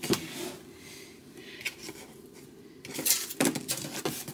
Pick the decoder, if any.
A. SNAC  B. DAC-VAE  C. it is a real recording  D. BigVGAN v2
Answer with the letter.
C